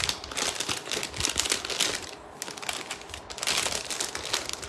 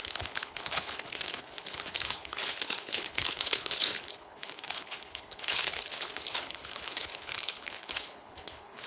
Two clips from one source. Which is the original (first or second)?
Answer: first